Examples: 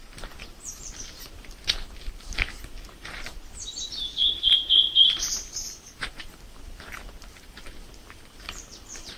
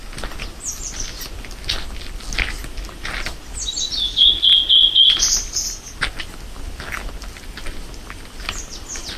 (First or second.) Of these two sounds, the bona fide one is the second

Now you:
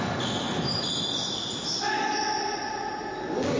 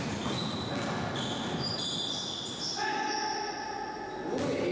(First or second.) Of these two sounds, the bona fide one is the second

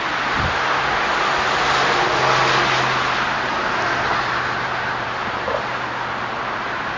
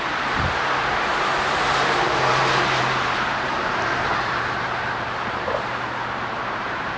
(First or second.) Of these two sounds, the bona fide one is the first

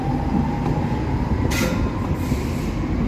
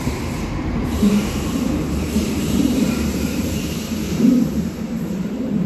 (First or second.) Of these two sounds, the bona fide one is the first